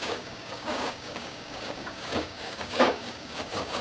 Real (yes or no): no